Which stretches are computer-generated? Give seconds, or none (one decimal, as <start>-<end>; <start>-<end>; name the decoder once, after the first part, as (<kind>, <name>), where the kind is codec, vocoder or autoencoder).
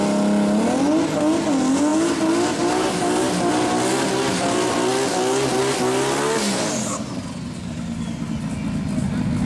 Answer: none